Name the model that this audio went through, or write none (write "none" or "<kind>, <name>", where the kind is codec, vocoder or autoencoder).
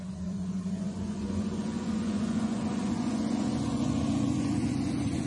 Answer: vocoder, Vocos